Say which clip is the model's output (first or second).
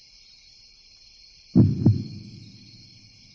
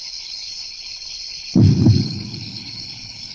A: second